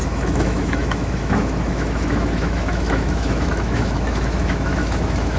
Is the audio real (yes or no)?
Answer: no